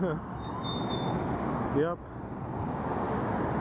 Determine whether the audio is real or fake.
real